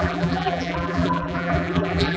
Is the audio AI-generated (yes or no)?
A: yes